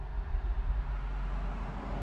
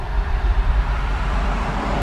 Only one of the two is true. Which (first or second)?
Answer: first